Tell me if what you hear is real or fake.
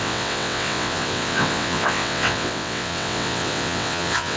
fake